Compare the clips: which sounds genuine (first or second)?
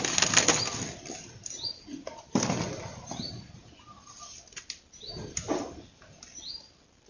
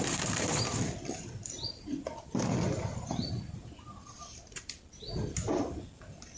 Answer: first